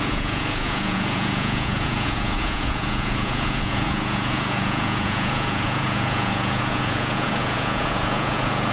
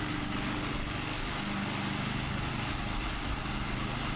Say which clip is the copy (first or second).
first